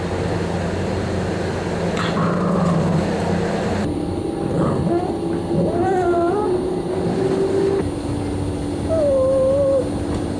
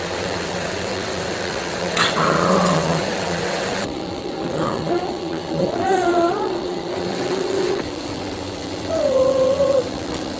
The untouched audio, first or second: first